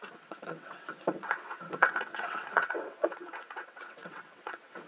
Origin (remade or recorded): remade